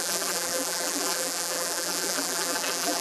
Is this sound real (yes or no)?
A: no